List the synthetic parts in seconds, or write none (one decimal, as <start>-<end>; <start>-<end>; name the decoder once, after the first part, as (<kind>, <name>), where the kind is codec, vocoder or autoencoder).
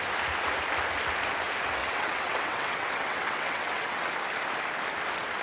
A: 1.8-4.1 (vocoder, WaveNeXt)